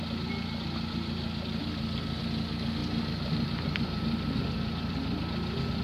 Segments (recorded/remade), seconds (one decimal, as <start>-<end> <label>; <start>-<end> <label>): 0.0-2.8 recorded; 2.8-5.2 remade; 5.2-5.8 recorded